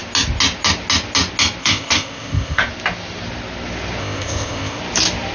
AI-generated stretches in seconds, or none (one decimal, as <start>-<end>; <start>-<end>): 1.6-2.6; 4.0-4.8